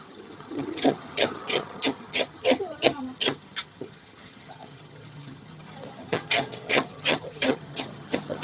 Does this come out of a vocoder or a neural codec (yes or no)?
yes